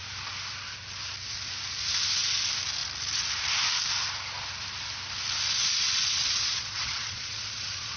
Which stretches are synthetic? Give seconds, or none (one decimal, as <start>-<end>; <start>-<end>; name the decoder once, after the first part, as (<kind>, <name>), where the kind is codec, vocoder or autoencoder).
5.6-8.0 (vocoder, Vocos)